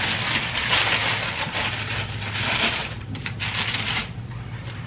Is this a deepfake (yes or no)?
yes